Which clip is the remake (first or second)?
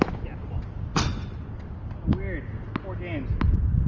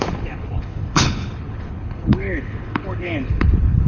second